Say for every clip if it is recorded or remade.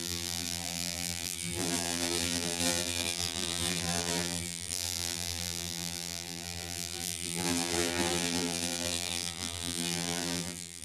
remade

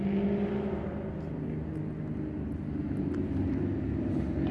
recorded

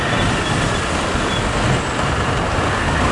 recorded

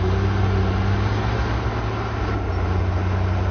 recorded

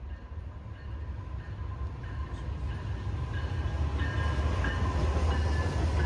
recorded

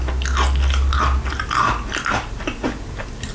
recorded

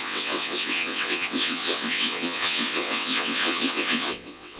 remade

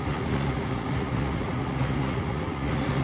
remade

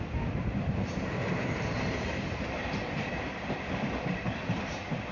remade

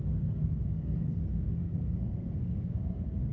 remade